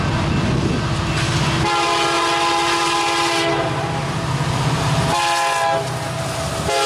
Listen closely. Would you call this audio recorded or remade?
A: recorded